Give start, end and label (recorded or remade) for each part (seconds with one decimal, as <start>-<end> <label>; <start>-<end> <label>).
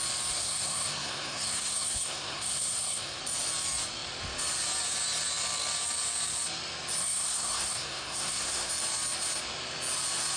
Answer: 0.0-0.4 recorded; 0.4-3.2 remade; 3.2-7.0 recorded; 7.0-8.7 remade; 8.7-10.4 recorded